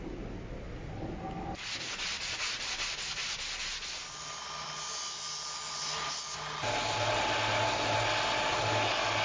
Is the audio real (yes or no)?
yes